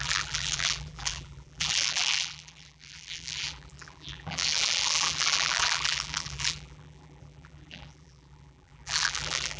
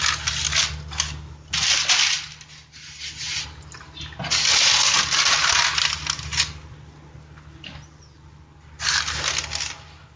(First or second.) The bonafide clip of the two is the second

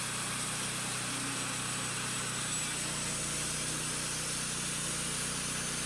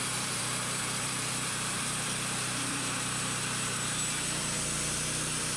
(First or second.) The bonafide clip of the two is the first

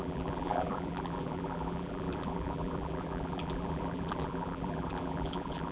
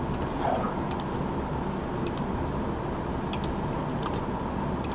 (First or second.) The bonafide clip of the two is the second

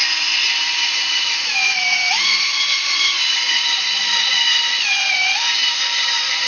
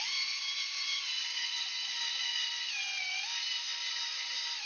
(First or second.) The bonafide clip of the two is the second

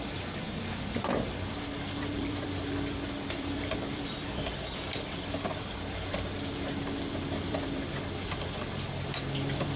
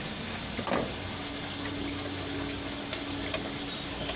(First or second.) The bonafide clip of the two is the second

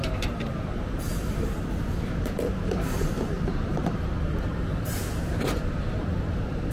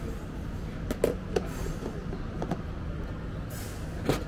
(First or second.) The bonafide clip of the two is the second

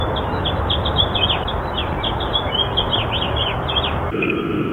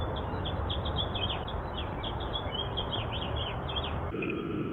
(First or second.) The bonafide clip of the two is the first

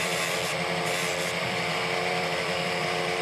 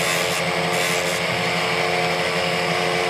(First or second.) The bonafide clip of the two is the second